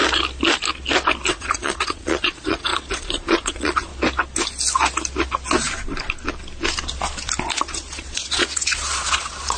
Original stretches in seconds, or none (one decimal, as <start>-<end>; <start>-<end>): 0.0-1.3; 3.9-7.6